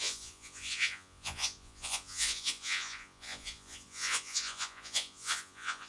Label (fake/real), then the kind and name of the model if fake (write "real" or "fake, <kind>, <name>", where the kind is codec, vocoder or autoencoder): fake, vocoder, Vocos